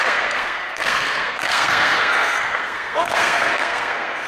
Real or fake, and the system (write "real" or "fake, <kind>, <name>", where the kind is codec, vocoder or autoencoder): fake, codec, SNAC